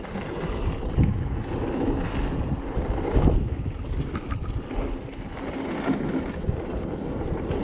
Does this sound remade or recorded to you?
recorded